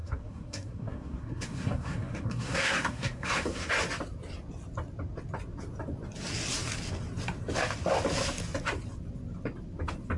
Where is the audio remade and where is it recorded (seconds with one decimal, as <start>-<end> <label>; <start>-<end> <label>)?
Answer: 0.0-3.7 remade; 3.7-10.2 recorded

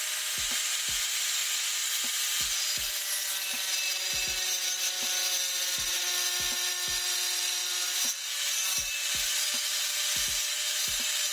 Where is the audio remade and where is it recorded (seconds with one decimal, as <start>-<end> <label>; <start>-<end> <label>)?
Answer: 0.0-11.3 recorded

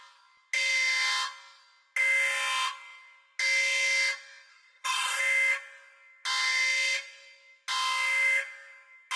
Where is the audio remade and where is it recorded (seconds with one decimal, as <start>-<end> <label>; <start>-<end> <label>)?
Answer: 0.0-4.5 recorded; 4.5-5.2 remade; 5.2-9.2 recorded

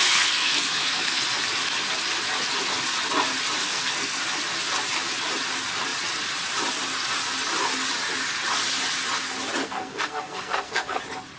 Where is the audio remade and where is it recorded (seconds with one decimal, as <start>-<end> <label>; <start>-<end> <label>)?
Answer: 0.0-1.2 remade; 1.2-3.6 recorded; 3.6-4.2 remade; 4.2-9.6 recorded; 9.6-11.0 remade; 11.0-11.4 recorded

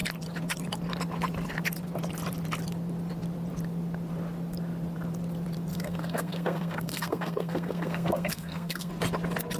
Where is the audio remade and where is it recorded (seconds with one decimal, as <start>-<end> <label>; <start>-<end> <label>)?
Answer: 0.0-5.7 recorded; 5.7-8.9 remade; 8.9-9.6 recorded